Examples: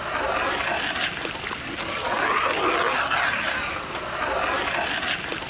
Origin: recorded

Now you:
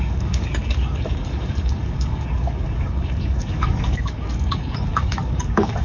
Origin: remade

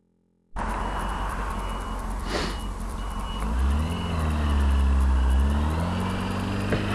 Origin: recorded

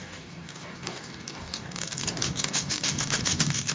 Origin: remade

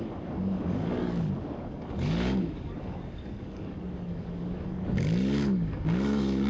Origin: remade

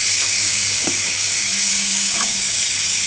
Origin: remade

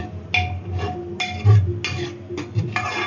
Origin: recorded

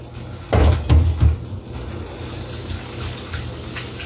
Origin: recorded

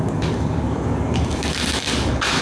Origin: remade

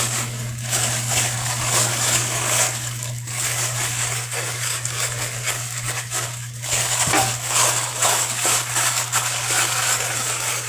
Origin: remade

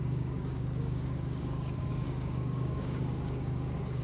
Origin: remade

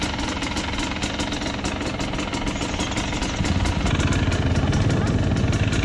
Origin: recorded